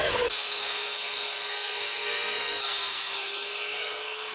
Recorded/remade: remade